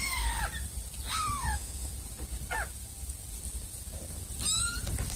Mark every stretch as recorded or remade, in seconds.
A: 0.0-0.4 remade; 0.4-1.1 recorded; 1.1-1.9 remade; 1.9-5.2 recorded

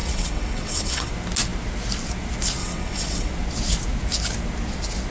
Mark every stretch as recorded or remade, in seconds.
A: 0.0-1.1 remade; 1.1-2.6 recorded; 2.6-3.3 remade; 3.3-5.1 recorded